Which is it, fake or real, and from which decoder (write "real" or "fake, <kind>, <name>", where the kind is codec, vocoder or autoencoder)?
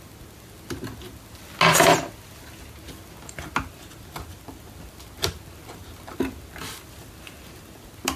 real